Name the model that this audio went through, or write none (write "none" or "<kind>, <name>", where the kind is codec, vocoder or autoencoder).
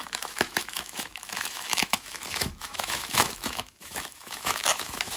autoencoder, DAC-VAE